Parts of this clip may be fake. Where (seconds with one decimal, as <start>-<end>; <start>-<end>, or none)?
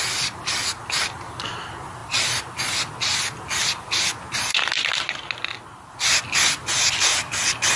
none